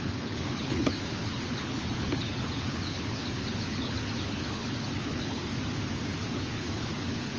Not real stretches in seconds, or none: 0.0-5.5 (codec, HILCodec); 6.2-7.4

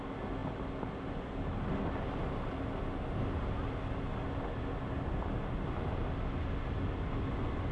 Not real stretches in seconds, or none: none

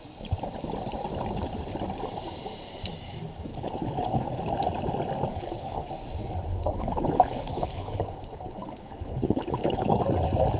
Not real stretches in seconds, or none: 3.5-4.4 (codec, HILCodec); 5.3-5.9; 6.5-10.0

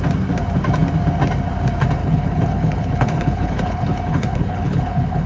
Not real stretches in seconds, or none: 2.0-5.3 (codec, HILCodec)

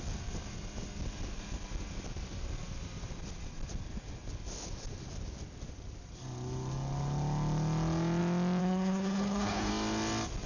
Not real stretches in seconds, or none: 8.6-9.7 (codec, HILCodec)